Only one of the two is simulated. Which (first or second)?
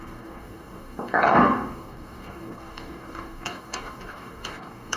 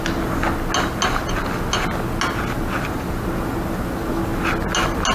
first